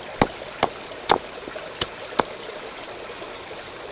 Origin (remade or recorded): recorded